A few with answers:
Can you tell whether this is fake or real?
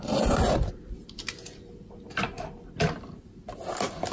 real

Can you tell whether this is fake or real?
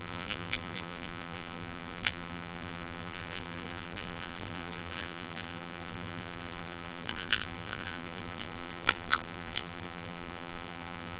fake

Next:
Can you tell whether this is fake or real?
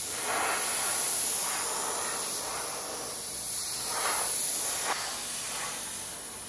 real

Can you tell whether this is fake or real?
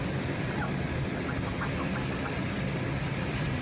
real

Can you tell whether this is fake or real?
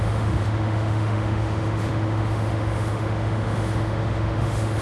fake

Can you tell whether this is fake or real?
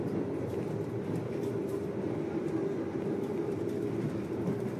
real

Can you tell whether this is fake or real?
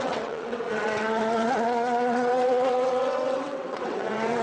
fake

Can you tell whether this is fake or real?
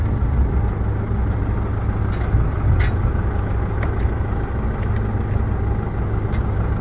real